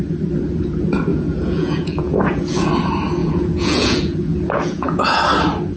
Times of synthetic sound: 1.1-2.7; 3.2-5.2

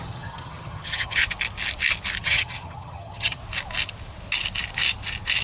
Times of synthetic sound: 0.0-1.2; 2.2-3.4

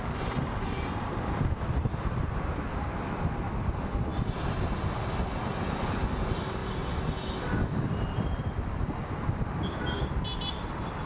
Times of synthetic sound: none

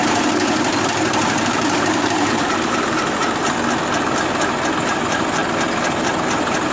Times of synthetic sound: 0.0-3.2; 4.9-5.4; 6.0-6.7

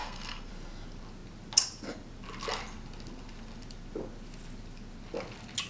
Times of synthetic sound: 0.0-0.5